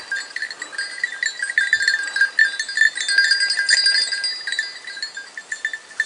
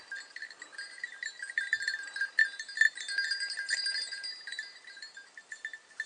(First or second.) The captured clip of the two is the first